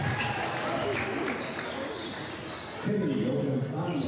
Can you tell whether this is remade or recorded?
recorded